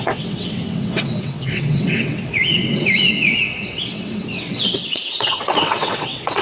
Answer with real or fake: fake